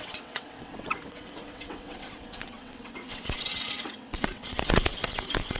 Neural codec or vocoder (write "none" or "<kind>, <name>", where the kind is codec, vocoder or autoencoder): vocoder, WaveNeXt